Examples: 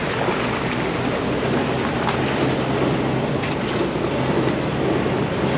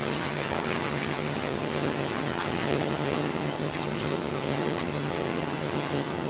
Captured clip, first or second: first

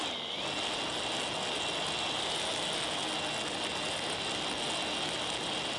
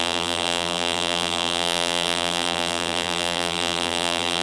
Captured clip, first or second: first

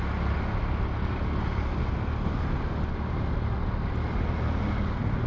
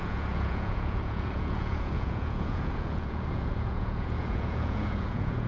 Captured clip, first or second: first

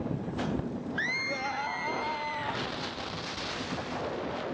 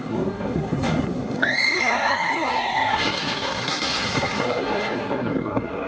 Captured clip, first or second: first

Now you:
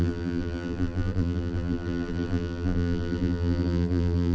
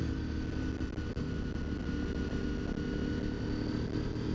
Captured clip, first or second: second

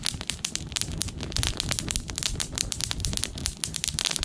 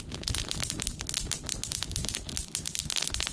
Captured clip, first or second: second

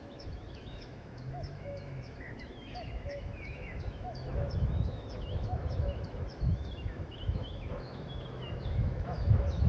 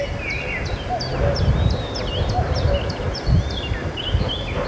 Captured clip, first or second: second